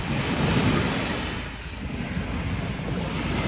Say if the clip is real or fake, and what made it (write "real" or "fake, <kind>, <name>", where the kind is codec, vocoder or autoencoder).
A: real